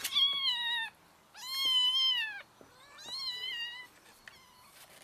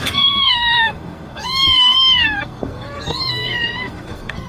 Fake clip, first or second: second